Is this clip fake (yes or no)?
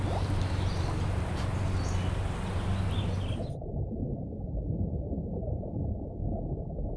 no